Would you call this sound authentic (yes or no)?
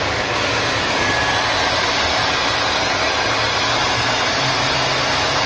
yes